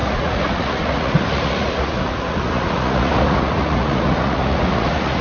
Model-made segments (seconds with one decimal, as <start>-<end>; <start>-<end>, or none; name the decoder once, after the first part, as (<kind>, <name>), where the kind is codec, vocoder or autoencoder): 0.0-5.2 (vocoder, Vocos)